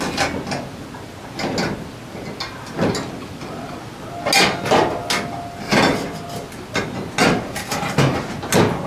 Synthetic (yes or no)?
no